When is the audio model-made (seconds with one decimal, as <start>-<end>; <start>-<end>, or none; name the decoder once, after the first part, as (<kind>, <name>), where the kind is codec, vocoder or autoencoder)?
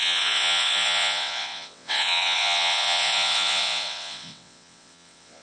0.0-5.4 (vocoder, WaveNeXt)